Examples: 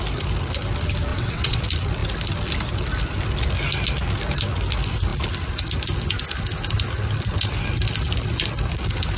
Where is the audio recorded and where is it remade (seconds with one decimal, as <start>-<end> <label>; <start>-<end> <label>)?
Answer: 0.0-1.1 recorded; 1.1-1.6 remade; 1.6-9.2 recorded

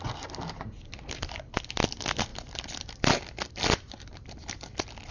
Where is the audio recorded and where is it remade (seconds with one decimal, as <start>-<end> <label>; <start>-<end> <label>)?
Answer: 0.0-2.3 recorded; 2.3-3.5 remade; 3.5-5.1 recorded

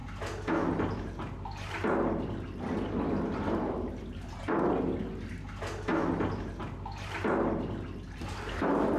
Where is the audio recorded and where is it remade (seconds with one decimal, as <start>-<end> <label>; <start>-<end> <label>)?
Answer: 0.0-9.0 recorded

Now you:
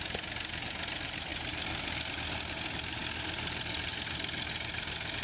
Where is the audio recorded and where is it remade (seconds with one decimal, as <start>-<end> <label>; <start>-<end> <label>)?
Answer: 0.0-5.2 recorded